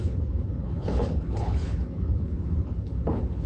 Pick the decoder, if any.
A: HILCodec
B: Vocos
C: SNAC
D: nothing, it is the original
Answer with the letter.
A